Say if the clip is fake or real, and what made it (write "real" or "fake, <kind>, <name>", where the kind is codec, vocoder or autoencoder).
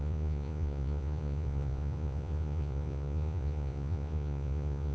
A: fake, vocoder, Vocos